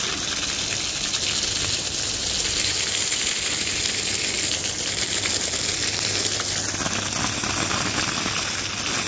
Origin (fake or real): real